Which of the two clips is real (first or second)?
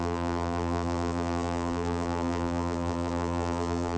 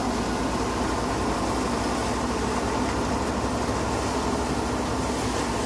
second